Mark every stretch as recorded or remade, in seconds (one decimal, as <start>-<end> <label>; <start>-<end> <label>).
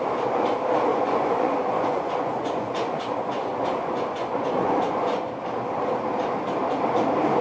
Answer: 0.0-0.9 recorded; 0.9-5.3 remade; 5.3-7.4 recorded